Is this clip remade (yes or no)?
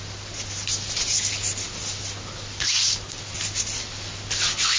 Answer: no